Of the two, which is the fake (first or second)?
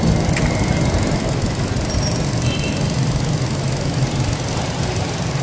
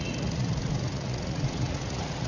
second